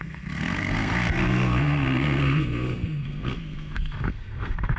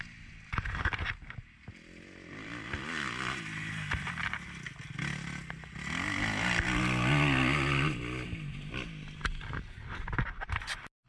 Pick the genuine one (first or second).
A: second